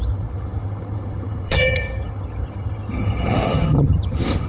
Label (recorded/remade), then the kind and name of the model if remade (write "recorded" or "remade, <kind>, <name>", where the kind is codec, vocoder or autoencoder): remade, vocoder, HiFi-GAN